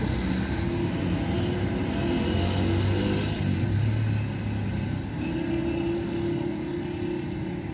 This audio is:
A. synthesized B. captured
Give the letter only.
B